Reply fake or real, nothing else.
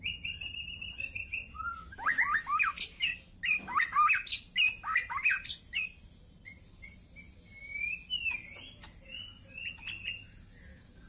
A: real